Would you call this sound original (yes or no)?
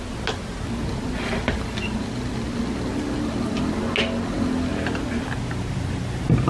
yes